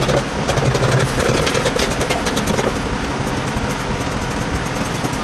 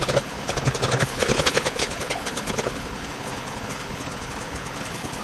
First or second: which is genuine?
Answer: first